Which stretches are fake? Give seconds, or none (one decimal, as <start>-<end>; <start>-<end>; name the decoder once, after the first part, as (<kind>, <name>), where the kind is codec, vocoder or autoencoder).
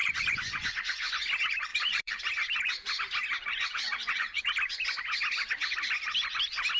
0.0-1.1 (vocoder, Vocos); 1.7-2.2; 3.4-4.5